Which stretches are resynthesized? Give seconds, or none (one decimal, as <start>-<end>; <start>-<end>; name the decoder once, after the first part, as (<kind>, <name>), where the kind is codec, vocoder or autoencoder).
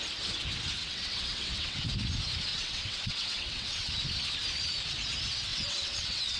0.8-1.9 (vocoder, WaveNeXt); 2.5-3.9; 5.5-6.4